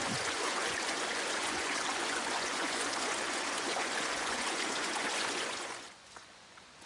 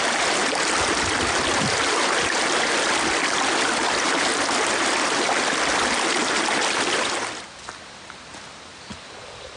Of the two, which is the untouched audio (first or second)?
second